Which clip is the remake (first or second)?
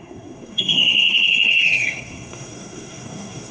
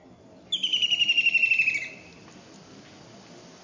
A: first